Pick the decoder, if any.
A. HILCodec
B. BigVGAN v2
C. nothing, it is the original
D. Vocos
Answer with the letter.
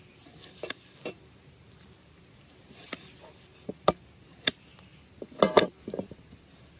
C